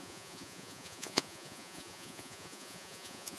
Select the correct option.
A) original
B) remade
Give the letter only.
B